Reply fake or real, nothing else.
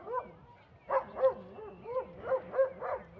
real